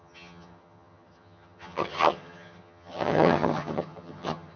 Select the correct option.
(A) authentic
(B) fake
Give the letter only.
B